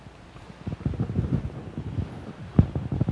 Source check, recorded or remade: recorded